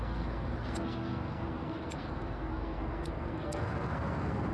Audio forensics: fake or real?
fake